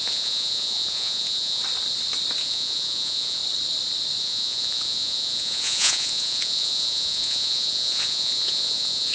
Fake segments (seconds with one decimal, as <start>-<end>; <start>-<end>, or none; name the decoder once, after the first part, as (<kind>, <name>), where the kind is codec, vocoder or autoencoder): 0.0-1.6 (vocoder, Vocos); 2.4-3.4; 4.2-9.1